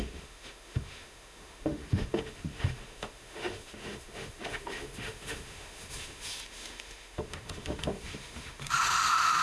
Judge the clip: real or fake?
fake